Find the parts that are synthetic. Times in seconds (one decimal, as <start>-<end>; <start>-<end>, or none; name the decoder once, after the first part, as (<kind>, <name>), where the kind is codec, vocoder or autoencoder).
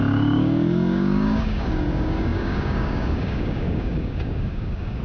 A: 0.0-5.0 (codec, DAC)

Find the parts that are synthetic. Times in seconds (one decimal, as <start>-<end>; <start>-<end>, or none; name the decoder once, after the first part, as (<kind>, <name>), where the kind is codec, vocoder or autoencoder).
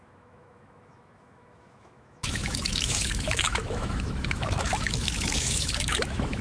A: 0.0-6.4 (autoencoder, DAC-VAE)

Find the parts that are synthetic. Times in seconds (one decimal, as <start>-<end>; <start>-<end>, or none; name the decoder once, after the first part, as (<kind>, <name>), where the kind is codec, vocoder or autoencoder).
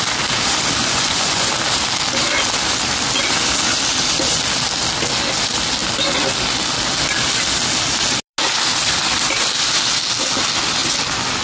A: 0.8-1.5 (vocoder, Vocos)